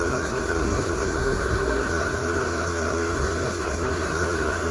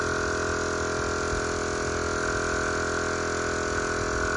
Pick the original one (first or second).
second